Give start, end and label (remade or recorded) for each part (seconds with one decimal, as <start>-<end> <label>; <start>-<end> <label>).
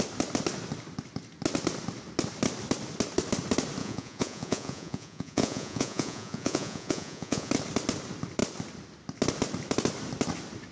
0.0-3.8 recorded; 3.8-7.5 remade; 7.5-10.7 recorded